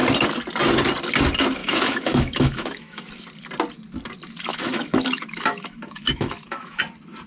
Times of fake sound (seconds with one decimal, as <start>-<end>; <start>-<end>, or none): 1.6-3.1; 4.5-6.8